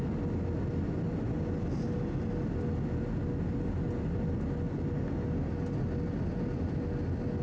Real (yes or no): yes